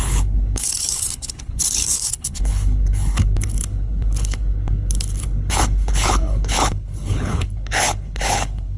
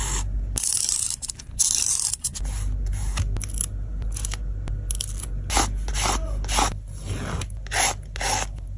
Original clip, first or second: second